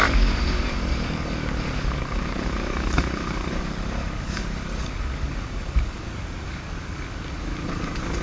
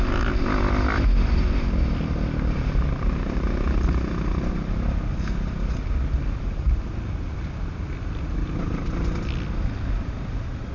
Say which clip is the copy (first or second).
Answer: first